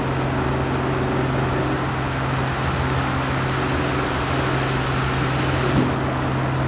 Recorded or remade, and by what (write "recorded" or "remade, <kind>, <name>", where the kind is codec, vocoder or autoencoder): recorded